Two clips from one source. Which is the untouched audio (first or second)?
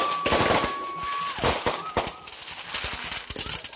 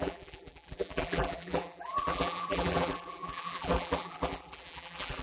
first